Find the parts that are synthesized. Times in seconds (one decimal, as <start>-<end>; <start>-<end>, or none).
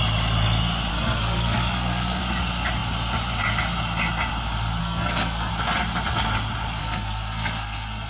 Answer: 0.9-2.2; 4.8-5.5; 6.8-8.1